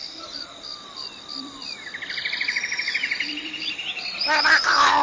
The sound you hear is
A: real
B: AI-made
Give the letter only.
B